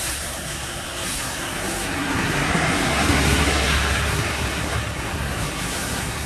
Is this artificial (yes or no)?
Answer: yes